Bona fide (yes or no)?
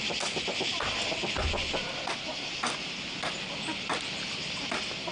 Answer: yes